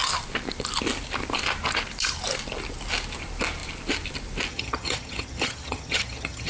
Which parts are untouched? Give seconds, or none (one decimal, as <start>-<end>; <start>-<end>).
0.0-4.5